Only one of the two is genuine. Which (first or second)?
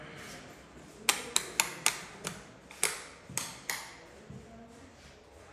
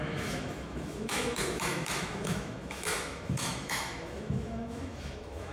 first